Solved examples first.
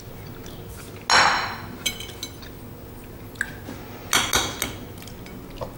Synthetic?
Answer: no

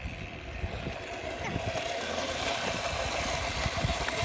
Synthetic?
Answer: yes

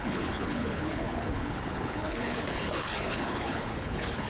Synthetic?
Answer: yes